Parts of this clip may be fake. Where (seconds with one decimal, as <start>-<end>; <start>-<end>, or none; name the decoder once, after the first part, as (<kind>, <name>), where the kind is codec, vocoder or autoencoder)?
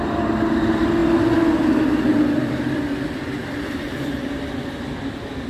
2.1-4.5 (vocoder, BigVGAN v2)